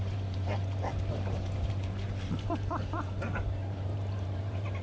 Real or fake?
fake